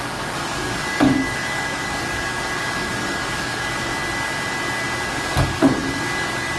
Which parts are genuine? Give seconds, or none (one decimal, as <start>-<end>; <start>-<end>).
3.9-5.1